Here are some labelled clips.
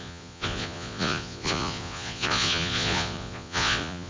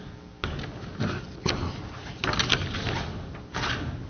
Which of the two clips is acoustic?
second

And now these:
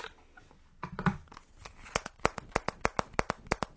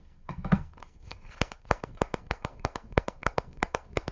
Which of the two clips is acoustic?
first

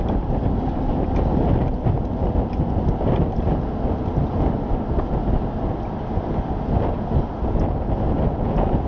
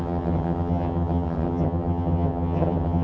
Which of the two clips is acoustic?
first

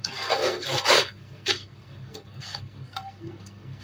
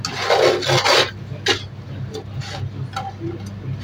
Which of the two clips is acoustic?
second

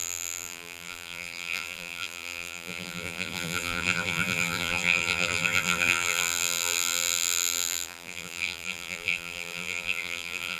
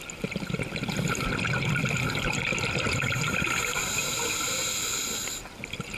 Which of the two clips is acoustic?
second